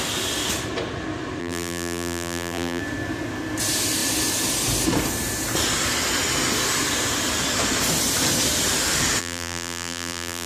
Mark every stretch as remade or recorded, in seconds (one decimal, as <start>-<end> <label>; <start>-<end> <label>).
0.0-1.4 recorded; 1.4-2.8 remade; 2.8-9.2 recorded; 9.2-10.5 remade